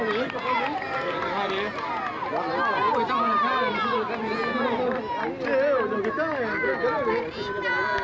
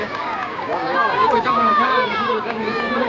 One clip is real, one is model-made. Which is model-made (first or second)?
second